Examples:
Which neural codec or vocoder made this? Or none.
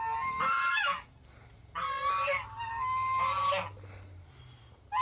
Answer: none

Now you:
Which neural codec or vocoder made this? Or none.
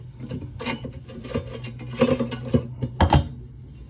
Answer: none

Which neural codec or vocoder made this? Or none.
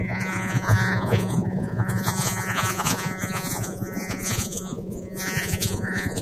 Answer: vocoder, Vocos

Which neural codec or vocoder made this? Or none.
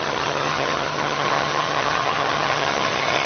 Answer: vocoder, HiFi-GAN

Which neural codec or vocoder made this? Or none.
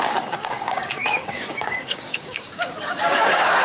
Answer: codec, DAC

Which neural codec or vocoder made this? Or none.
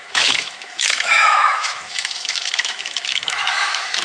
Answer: autoencoder, DAC-VAE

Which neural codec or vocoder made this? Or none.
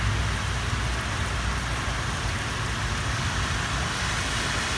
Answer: none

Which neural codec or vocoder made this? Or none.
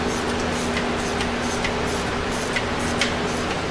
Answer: none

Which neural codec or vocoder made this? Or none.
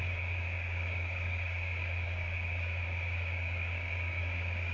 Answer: codec, DAC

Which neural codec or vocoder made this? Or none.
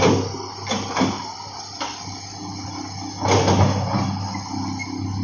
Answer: none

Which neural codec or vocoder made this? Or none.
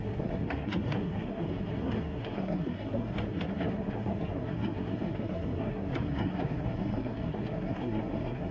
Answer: codec, SNAC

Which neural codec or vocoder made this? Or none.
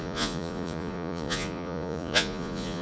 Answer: vocoder, Vocos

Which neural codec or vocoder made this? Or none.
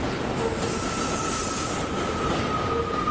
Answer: none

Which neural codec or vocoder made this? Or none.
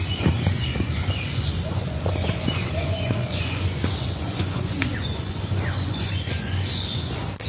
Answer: vocoder, Vocos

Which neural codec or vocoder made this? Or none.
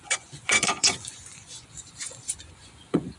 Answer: vocoder, Vocos